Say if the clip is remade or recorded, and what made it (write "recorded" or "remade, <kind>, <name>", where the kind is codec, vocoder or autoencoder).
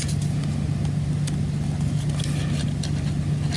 recorded